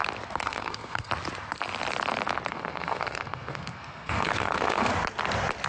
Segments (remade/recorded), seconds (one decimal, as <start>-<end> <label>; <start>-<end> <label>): 0.0-0.4 recorded; 0.4-1.1 remade; 1.1-2.5 recorded; 2.5-4.9 remade; 4.9-5.7 recorded